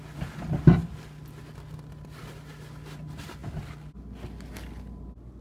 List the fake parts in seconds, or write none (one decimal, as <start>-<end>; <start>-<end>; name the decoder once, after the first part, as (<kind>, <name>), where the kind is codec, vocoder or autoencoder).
none